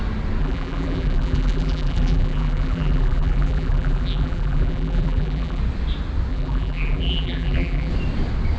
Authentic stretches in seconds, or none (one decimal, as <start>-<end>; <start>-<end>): 0.0-0.4; 5.6-6.3; 7.9-8.6